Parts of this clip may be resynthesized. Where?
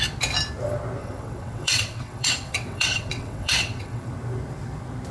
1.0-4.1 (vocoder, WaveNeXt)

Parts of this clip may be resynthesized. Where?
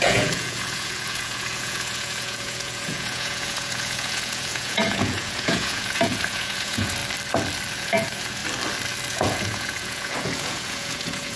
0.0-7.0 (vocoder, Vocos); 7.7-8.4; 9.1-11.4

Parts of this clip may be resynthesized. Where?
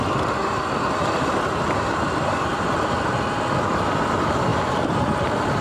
none